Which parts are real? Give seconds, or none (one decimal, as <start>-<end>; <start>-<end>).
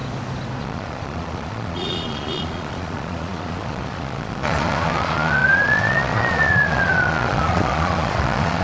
0.0-0.6